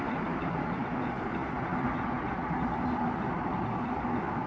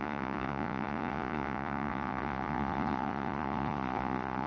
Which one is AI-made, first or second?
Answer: second